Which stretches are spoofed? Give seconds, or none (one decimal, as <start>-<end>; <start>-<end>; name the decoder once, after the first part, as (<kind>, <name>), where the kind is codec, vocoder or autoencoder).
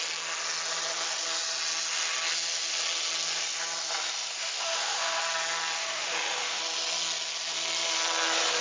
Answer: 4.4-5.2 (autoencoder, DAC-VAE); 5.8-6.6